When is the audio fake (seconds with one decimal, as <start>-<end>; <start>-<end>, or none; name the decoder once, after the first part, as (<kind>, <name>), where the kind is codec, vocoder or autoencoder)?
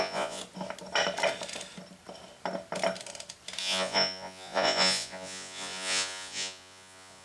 0.0-0.4 (vocoder, Vocos); 3.6-7.2